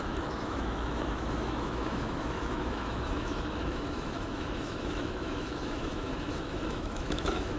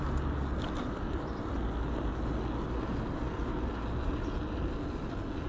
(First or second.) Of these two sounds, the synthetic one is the first